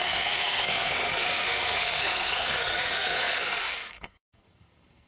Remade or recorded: remade